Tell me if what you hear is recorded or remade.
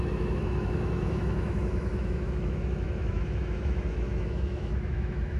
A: remade